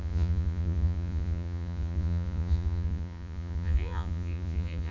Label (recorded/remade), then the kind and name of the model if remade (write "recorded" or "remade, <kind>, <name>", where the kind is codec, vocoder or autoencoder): remade, vocoder, Vocos